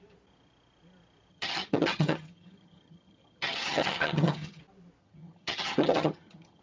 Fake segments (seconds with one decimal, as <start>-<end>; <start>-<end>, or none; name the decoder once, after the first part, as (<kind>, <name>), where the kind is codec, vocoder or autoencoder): 1.3-4.6 (vocoder, HiFi-GAN); 5.0-6.6